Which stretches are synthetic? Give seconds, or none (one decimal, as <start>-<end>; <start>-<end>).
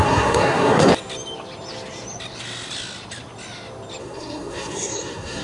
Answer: 0.0-0.9; 4.0-5.4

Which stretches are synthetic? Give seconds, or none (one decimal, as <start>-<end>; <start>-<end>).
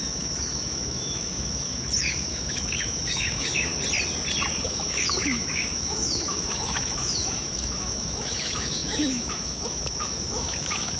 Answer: 0.0-3.7; 4.6-11.0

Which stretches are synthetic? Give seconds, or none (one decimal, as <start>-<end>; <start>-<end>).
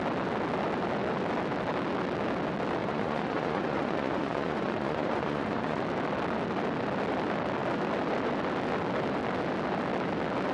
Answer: 2.8-5.8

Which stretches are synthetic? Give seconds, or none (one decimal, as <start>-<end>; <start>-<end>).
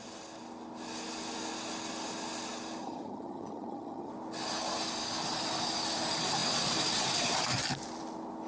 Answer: 2.8-4.1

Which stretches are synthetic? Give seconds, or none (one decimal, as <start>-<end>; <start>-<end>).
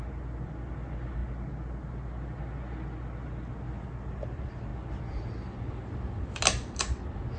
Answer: none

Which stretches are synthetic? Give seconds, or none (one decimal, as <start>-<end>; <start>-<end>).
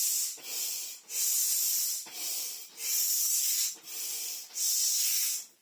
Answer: 0.5-1.1; 2.6-3.9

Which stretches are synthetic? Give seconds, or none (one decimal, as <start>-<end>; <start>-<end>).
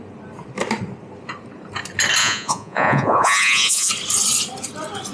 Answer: 2.2-3.9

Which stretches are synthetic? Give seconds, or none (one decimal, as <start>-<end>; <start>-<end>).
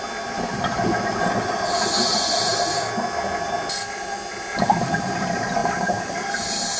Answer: none